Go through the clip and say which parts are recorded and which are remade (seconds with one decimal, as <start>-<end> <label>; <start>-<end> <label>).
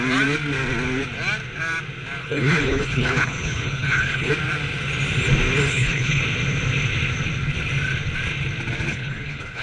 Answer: 0.0-2.2 recorded; 2.2-4.3 remade; 4.3-5.7 recorded; 5.7-6.2 remade; 6.2-8.9 recorded; 8.9-9.6 remade